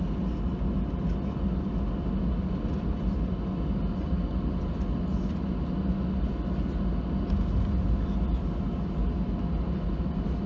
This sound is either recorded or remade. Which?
recorded